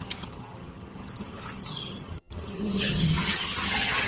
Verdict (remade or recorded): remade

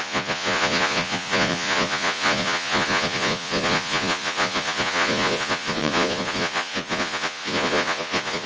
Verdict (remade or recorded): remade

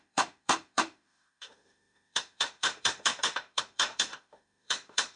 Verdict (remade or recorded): remade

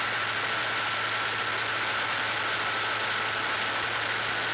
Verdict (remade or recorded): recorded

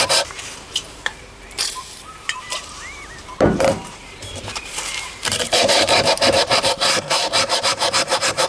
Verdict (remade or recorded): remade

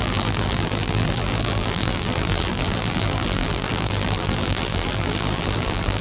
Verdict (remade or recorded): remade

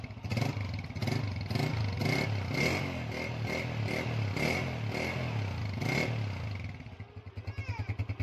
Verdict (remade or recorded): recorded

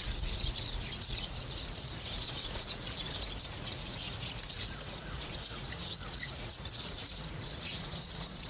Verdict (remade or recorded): remade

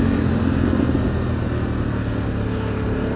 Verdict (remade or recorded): recorded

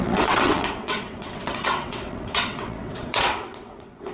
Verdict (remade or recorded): remade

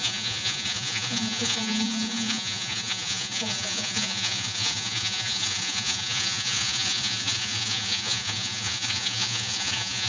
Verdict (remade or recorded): remade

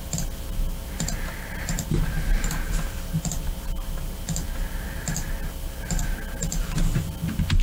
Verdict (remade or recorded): recorded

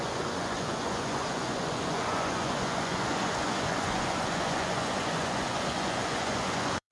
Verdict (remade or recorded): remade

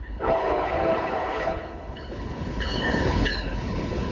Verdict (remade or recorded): remade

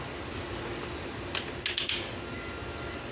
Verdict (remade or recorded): recorded